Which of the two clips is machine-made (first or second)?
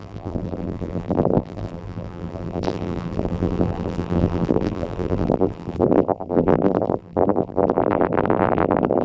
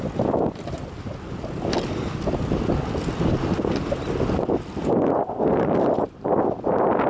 first